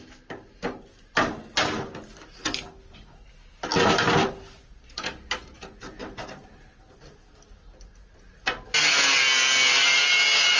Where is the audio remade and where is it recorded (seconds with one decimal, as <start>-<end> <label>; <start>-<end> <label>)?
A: 0.0-10.6 recorded